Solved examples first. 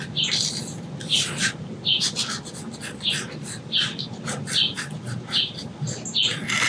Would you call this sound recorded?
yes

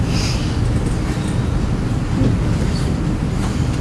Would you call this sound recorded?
yes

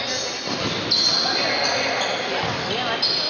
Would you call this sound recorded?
yes